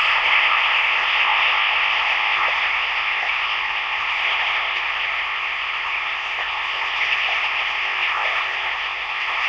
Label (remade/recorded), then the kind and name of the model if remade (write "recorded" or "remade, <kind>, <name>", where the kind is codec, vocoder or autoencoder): remade, codec, ZipCodec